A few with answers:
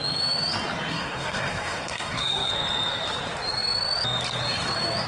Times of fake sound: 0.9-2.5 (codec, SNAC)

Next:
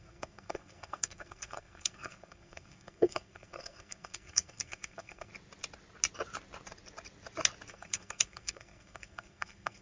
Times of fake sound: 0.0-5.3 (codec, SNAC); 7.7-9.8

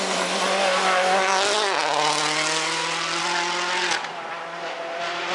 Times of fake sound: none